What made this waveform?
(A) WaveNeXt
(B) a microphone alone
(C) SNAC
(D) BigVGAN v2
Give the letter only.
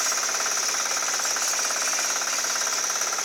B